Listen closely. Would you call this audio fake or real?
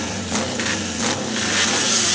real